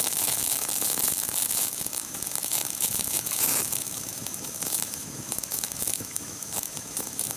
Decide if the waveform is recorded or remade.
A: remade